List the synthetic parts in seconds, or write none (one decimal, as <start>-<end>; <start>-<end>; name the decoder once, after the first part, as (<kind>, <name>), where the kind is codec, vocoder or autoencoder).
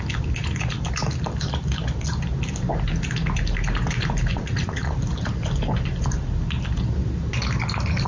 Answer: 4.3-4.9 (vocoder, Vocos)